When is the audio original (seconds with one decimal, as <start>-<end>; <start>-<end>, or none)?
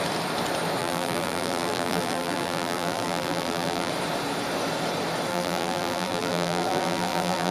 0.0-0.8; 3.9-5.3